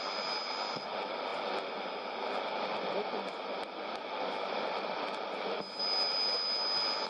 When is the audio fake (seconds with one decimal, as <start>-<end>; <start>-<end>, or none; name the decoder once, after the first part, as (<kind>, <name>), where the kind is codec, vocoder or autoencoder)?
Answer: none